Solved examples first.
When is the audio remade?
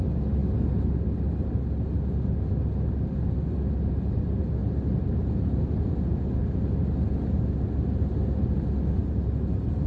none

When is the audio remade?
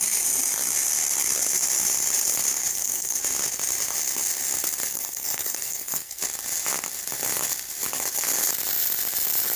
2.7-3.2 (codec, SNAC); 4.9-6.2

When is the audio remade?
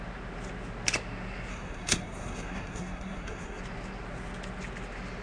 1.5-3.6 (codec, SNAC)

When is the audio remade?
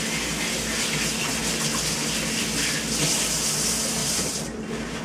4.0-5.0 (vocoder, BigVGAN v2)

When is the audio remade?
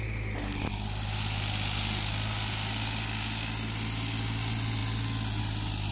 none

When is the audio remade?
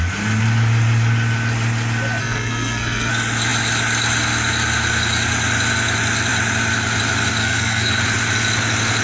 2.2-3.1 (codec, SNAC); 7.4-8.0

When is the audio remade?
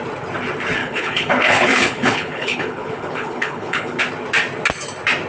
0.8-4.0 (codec, HILCodec)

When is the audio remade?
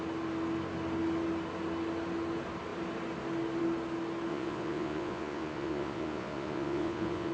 4.3-7.3 (vocoder, Vocos)